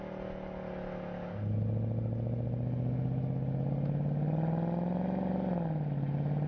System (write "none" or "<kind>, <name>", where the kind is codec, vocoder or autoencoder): none